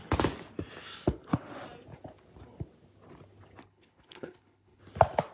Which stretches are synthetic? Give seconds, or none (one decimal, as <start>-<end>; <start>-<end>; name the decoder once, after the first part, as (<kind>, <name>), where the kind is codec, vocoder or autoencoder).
3.6-4.8 (codec, HILCodec)